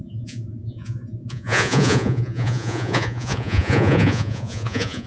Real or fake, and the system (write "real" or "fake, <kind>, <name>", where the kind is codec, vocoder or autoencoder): fake, vocoder, Vocos